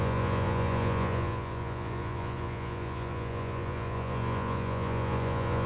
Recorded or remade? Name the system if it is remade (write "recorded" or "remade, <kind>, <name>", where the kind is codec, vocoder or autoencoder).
remade, vocoder, Vocos